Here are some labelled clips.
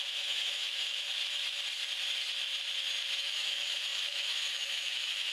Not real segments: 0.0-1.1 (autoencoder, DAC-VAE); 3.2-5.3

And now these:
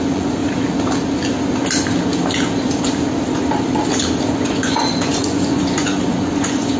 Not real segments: 0.0-0.4 (vocoder, Vocos); 4.3-6.8

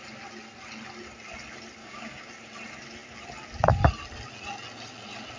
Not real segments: 1.8-2.3 (codec, DAC)